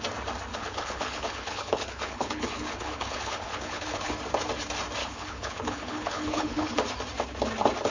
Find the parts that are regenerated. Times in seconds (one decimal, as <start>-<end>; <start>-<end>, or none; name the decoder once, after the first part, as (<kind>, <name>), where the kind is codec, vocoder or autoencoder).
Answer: 0.5-4.1 (codec, HILCodec); 5.0-6.7